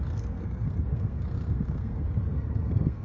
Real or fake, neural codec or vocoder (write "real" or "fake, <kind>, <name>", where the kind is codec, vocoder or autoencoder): fake, codec, SNAC